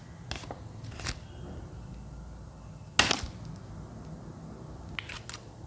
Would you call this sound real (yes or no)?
yes